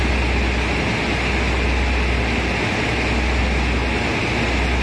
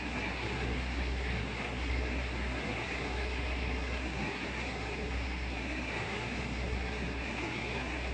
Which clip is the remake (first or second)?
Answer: second